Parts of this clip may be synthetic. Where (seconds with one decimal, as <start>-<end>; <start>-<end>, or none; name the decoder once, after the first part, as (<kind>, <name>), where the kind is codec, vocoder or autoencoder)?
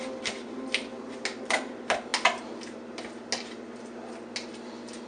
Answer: none